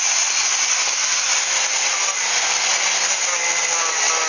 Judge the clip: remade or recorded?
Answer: recorded